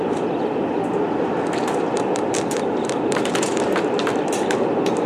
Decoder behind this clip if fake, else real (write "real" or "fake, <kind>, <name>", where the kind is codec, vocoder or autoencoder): fake, vocoder, BigVGAN v2